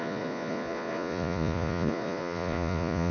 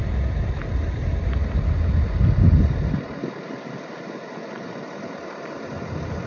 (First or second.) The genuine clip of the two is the second